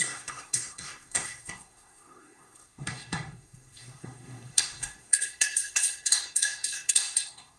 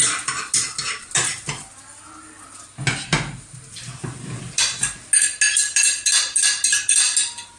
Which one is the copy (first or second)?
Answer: first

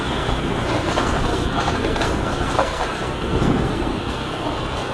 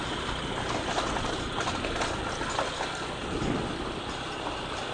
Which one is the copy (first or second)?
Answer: first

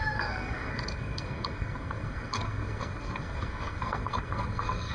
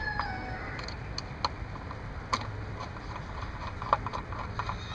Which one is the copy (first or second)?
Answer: first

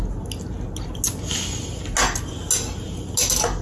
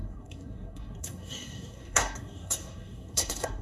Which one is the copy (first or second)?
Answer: second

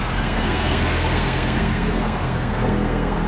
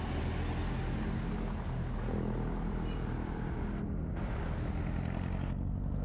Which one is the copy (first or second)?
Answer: first